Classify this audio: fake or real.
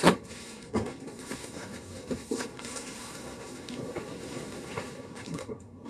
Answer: fake